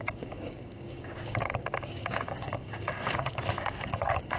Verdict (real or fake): fake